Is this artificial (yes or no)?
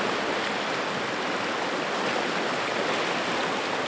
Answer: no